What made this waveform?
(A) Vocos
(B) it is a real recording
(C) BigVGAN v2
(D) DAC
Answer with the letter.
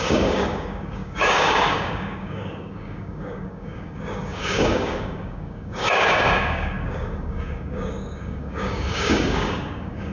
D